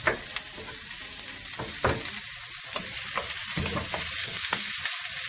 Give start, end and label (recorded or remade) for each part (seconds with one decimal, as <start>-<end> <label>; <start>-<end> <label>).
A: 0.0-4.2 recorded; 4.2-4.7 remade; 4.7-5.3 recorded